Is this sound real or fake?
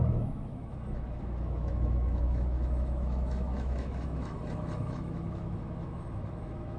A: fake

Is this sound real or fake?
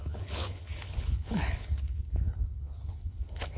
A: fake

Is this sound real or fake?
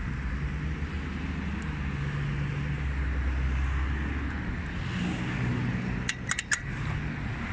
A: real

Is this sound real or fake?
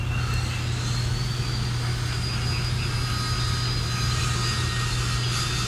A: real